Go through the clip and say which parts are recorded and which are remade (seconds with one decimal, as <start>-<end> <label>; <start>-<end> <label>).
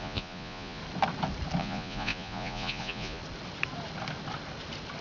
0.0-0.8 remade; 0.8-1.6 recorded; 1.6-3.2 remade; 3.2-5.0 recorded